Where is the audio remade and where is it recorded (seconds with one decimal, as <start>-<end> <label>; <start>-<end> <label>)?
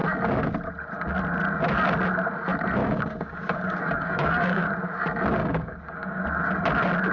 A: 0.0-2.8 recorded; 2.8-4.7 remade; 4.7-5.4 recorded; 5.4-6.2 remade; 6.2-7.1 recorded